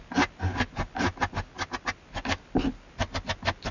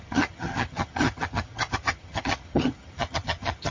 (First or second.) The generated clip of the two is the second